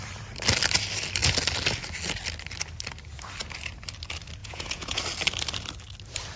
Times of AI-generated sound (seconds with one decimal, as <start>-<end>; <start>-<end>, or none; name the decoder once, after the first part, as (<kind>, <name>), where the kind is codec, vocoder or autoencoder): 4.4-5.0 (vocoder, Vocos)

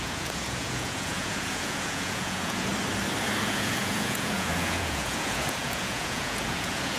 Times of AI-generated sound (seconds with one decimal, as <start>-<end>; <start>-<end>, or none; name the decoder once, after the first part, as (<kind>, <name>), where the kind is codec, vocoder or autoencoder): 0.0-2.7 (vocoder, Vocos); 3.4-7.0